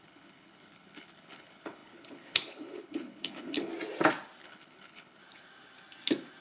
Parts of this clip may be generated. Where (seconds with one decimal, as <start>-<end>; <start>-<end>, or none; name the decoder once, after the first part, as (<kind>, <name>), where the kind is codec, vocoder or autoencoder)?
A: 0.0-3.7 (codec, HILCodec); 4.4-5.2

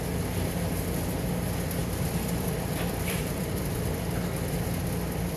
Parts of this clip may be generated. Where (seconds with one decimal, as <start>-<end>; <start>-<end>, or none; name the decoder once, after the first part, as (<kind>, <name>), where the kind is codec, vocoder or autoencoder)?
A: 1.8-4.0 (vocoder, BigVGAN v2)

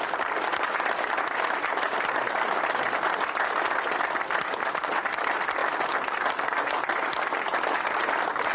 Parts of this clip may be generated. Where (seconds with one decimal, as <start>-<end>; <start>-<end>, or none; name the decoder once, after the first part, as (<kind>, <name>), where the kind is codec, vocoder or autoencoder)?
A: none

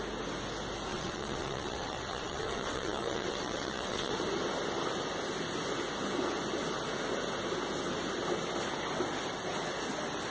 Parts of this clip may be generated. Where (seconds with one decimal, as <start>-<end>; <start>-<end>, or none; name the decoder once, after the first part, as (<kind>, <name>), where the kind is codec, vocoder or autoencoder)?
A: 0.9-4.1 (vocoder, WaveNeXt)